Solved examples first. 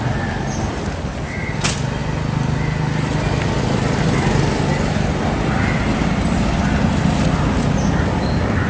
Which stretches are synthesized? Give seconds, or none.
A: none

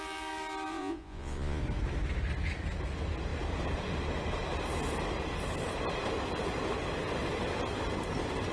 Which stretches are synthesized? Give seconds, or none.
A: 0.7-1.6 (vocoder, Vocos)

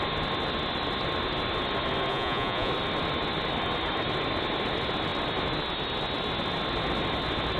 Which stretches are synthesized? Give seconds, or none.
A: 2.1-2.7 (vocoder, Vocos)

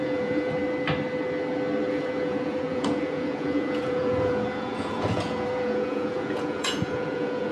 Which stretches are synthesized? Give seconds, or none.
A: 0.0-0.6 (vocoder, Vocos); 1.9-7.5